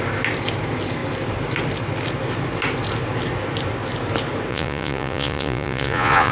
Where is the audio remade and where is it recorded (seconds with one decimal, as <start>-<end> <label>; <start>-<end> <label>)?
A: 0.0-4.5 recorded; 4.5-6.3 remade